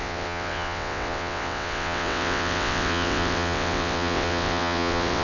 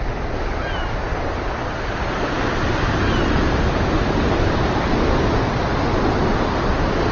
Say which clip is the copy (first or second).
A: first